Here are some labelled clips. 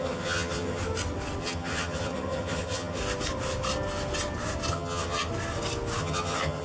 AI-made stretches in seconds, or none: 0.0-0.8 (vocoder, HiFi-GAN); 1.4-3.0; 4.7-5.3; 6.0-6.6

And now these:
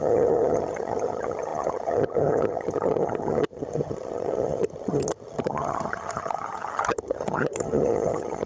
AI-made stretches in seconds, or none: 0.0-8.5 (vocoder, HiFi-GAN)

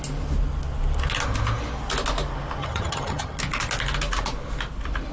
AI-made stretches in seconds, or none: 2.6-3.4 (vocoder, HiFi-GAN)

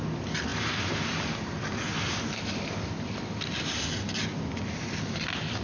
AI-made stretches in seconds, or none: none

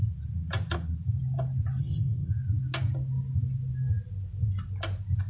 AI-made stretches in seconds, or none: 1.8-2.3 (vocoder, HiFi-GAN)

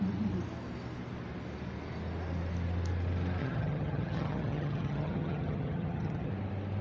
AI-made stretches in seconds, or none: 3.4-6.3 (vocoder, HiFi-GAN)

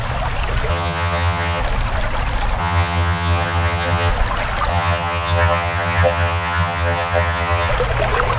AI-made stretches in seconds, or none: 0.7-1.6 (vocoder, HiFi-GAN); 2.6-4.1; 4.7-7.7